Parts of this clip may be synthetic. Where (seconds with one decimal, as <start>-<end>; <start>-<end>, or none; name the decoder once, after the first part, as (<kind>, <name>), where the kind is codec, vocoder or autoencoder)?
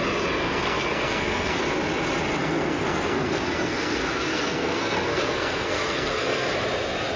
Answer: 0.4-1.6 (codec, SNAC); 2.4-6.5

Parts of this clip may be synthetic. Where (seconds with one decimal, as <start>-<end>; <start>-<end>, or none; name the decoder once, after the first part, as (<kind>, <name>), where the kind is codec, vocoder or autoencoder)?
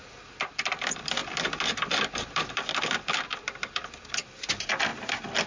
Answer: 1.2-4.5 (vocoder, BigVGAN v2)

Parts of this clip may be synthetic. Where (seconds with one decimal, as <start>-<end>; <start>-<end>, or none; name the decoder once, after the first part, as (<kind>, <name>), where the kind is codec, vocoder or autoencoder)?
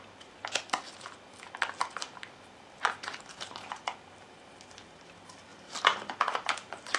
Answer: 3.3-5.0 (vocoder, BigVGAN v2); 5.5-7.0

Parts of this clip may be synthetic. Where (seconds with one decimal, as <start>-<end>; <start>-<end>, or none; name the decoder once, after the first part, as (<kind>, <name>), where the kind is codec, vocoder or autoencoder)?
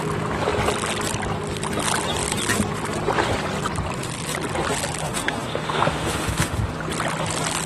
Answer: 5.0-6.7 (autoencoder, DAC-VAE)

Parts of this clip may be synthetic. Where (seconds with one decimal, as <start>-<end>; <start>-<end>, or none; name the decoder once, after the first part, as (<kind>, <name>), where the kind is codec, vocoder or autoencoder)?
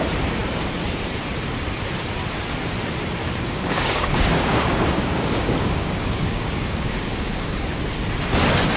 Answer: 3.2-7.8 (codec, DAC)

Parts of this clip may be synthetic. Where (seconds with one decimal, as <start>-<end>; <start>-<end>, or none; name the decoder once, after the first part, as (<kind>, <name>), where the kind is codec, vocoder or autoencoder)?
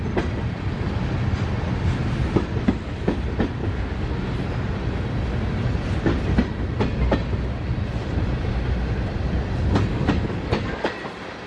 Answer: 3.6-4.1 (codec, DAC); 9.9-10.9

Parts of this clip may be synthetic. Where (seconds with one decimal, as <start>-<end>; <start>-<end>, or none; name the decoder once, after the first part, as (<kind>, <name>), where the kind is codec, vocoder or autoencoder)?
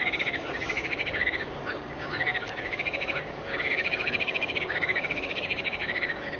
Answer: 0.0-6.4 (codec, DAC)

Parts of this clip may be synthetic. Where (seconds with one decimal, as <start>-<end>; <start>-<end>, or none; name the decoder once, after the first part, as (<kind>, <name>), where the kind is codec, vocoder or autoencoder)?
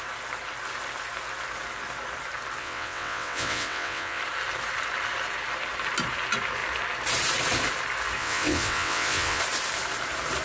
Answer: 2.6-4.2 (vocoder, WaveNeXt); 8.2-9.4